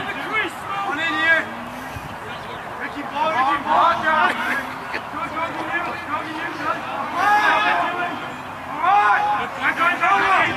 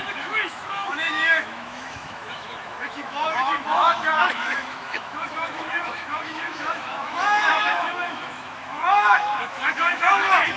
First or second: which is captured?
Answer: first